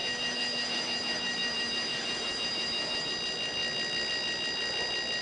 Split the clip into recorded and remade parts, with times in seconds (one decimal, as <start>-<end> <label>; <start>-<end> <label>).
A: 0.0-3.1 remade; 3.1-5.2 recorded